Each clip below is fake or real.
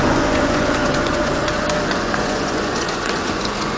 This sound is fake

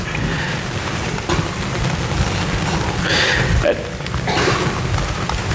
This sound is real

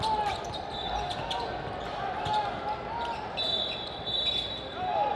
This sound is real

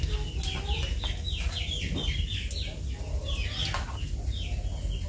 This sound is real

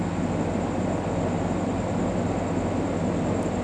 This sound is real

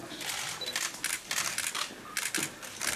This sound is real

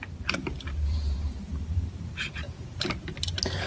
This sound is fake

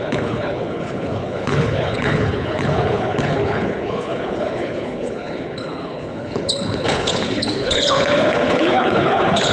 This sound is fake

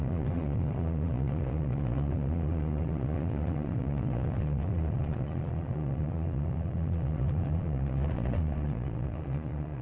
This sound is fake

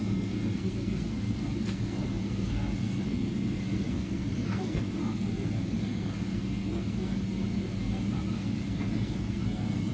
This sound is fake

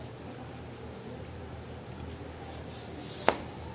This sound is real